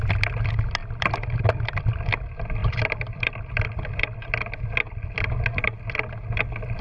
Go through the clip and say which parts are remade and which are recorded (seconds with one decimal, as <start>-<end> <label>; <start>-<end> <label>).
0.0-0.8 recorded; 0.8-1.8 remade; 1.8-2.6 recorded; 2.6-4.5 remade; 4.5-6.8 recorded